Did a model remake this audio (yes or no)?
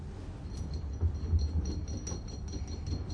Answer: no